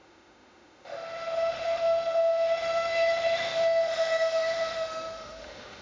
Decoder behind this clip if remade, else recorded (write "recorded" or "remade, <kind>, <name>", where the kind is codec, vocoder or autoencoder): remade, autoencoder, DAC-VAE